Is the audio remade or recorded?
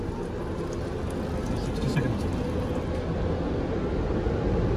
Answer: recorded